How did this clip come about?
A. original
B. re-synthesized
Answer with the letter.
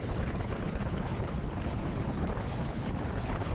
B